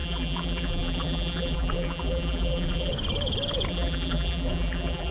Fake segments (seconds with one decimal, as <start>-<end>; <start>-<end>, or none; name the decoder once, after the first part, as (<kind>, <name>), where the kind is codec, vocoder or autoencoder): 0.0-2.9 (vocoder, BigVGAN v2); 3.7-5.1